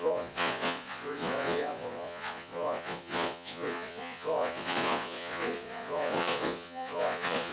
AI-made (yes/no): yes